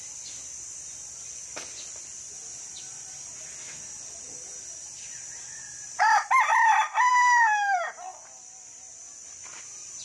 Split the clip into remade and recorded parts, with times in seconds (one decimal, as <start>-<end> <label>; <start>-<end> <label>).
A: 0.0-10.0 recorded